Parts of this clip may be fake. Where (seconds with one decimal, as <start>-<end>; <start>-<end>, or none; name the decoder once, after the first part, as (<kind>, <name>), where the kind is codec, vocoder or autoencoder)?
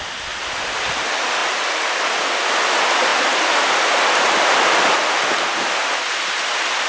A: none